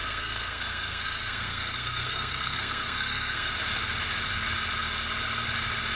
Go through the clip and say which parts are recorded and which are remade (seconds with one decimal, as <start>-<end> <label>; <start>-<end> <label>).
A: 0.0-3.5 remade; 3.5-5.9 recorded